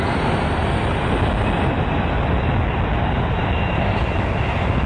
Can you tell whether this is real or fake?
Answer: real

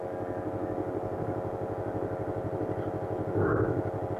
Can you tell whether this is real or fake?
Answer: real